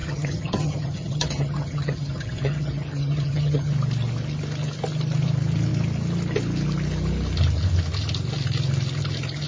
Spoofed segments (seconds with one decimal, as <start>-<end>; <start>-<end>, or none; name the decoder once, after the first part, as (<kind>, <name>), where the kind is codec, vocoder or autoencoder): 0.0-3.7 (vocoder, HiFi-GAN)